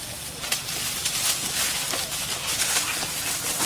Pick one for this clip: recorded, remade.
recorded